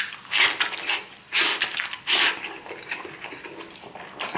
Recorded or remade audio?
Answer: recorded